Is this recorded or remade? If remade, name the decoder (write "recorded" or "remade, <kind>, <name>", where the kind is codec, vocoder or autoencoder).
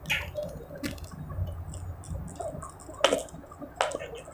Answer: recorded